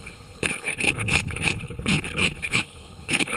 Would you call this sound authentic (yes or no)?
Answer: no